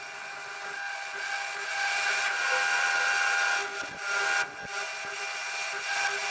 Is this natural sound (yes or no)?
yes